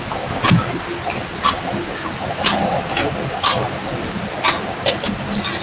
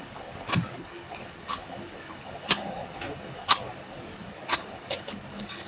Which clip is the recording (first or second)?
first